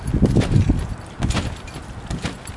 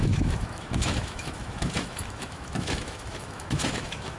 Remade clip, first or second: second